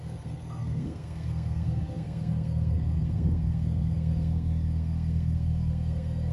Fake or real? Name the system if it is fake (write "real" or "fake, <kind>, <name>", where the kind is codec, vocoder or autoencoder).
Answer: fake, codec, SNAC